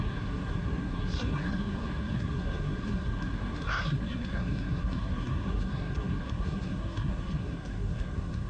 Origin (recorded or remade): remade